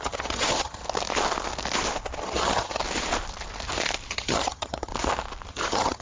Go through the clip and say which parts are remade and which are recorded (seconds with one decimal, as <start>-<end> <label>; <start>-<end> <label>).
0.0-0.8 remade; 0.8-2.2 recorded; 2.2-2.8 remade; 2.8-4.1 recorded; 4.1-4.9 remade; 4.9-5.5 recorded; 5.5-6.0 remade

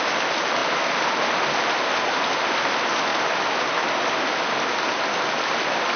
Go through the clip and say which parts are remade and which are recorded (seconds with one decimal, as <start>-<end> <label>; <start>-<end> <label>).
0.0-6.0 recorded